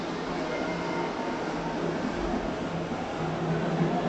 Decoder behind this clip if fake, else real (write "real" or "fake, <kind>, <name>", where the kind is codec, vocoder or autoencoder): real